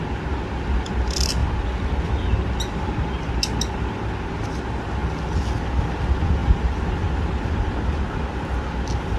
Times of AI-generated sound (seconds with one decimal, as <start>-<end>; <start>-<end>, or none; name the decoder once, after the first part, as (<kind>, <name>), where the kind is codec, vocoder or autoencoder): none